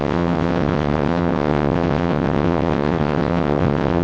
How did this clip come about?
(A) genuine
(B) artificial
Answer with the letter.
B